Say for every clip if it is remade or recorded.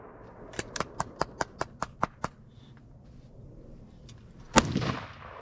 recorded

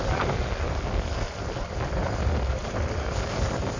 recorded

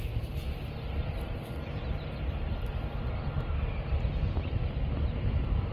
recorded